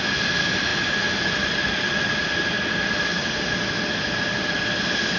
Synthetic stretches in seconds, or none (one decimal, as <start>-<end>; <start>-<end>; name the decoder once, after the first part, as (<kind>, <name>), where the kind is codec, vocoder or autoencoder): 0.7-3.3 (vocoder, BigVGAN v2)